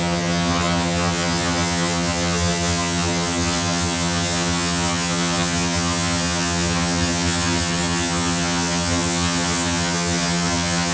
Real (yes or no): no